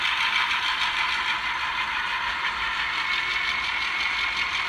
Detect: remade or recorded remade